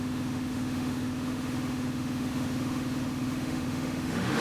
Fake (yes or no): yes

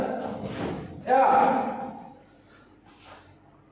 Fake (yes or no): no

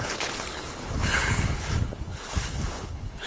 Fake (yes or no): yes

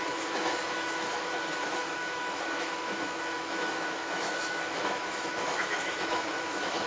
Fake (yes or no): yes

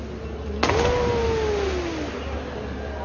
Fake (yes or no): no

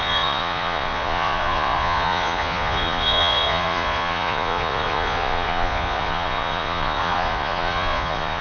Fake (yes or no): yes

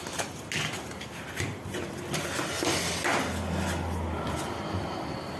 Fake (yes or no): no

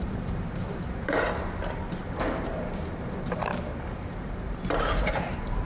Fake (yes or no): yes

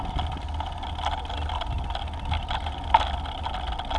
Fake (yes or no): no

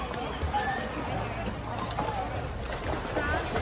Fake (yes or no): no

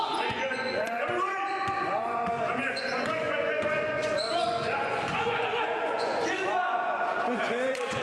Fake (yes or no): yes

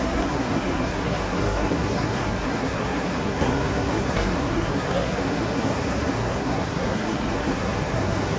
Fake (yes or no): yes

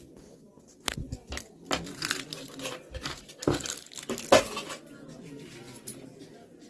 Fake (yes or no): no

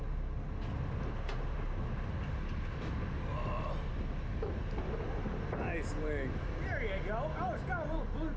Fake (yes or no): no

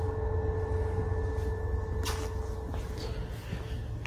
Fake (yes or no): no